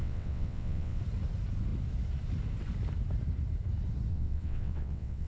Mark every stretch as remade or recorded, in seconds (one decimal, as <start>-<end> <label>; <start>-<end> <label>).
0.0-1.0 remade; 1.0-4.1 recorded; 4.1-5.3 remade